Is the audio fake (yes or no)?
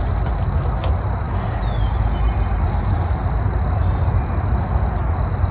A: no